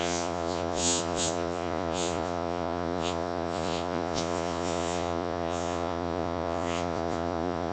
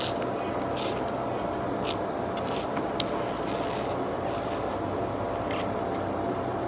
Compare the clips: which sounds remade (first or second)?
first